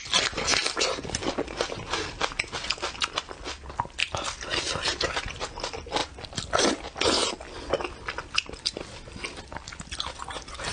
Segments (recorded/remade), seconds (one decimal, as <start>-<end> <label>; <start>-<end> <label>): 0.0-10.7 recorded